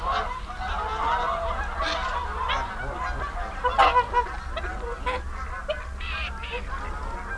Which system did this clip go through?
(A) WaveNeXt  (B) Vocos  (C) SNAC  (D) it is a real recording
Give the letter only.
D